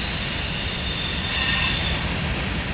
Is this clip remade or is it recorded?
recorded